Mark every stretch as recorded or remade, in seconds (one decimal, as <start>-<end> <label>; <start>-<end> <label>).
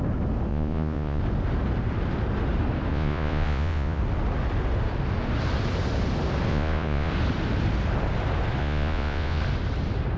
0.0-0.5 recorded; 0.5-1.2 remade; 1.2-2.9 recorded; 2.9-4.0 remade; 4.0-6.5 recorded; 6.5-7.1 remade; 7.1-8.6 recorded; 8.6-9.4 remade; 9.4-10.2 recorded